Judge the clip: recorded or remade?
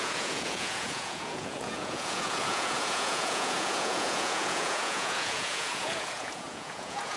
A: remade